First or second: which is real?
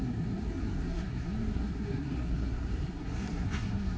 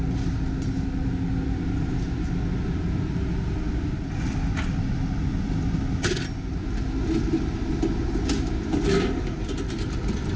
second